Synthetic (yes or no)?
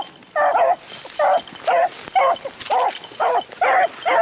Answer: no